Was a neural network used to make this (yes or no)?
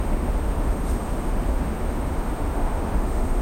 yes